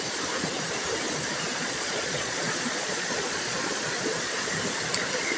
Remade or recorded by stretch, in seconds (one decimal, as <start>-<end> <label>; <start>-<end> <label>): 0.0-1.5 recorded; 1.5-4.5 remade; 4.5-5.4 recorded